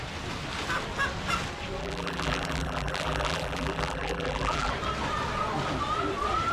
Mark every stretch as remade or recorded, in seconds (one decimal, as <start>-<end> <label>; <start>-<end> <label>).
0.0-1.8 recorded; 1.8-4.7 remade; 4.7-6.5 recorded